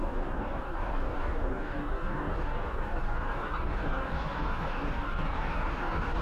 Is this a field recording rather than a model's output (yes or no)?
no